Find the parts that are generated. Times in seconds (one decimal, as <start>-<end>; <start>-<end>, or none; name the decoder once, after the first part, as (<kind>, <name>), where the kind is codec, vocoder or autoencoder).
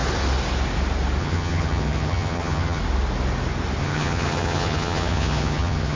1.2-2.8 (vocoder, HiFi-GAN); 3.8-6.0